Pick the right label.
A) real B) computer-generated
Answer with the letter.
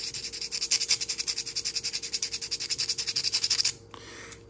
A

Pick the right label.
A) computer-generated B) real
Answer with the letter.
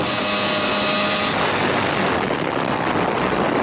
B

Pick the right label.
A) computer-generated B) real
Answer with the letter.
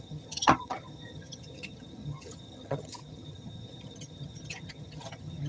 A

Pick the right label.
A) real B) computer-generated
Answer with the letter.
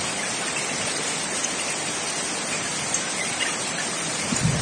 A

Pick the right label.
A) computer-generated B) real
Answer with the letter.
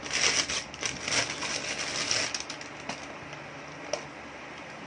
B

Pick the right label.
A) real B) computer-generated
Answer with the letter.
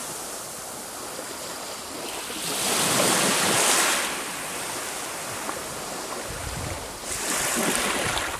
A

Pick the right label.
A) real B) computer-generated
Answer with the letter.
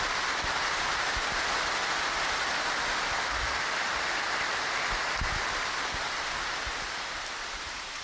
A